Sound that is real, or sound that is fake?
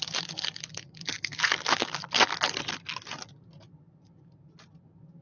real